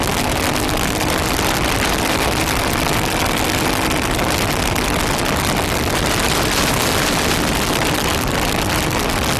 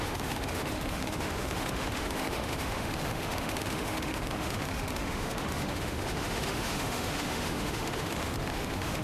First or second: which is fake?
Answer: second